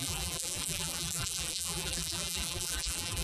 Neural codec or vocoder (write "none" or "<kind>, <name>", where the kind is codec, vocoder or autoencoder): vocoder, BigVGAN v2